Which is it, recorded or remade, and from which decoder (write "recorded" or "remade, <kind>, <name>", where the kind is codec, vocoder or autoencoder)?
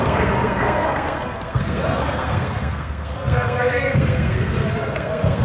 remade, codec, SNAC